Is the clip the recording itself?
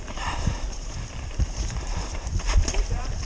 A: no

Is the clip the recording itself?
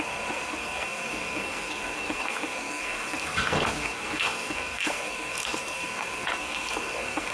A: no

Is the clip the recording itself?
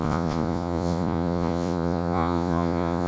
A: no